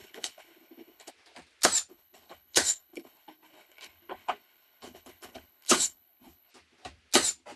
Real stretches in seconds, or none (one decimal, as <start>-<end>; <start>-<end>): 1.1-1.9; 6.5-7.6